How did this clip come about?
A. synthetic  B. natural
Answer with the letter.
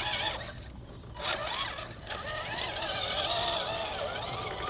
B